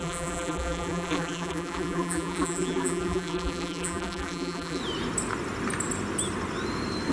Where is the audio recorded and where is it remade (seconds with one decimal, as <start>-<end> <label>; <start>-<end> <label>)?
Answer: 0.0-4.8 remade; 4.8-7.1 recorded

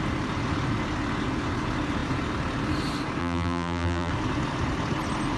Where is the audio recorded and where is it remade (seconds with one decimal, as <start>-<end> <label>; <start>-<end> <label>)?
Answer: 0.0-3.2 recorded; 3.2-4.1 remade; 4.1-5.4 recorded